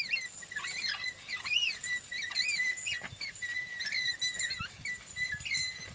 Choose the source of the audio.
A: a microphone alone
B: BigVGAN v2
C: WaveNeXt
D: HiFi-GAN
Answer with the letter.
A